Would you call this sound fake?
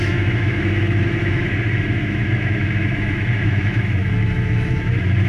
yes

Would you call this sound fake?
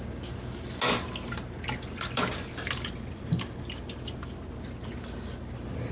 no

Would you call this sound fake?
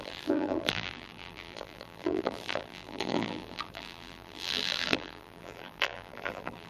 yes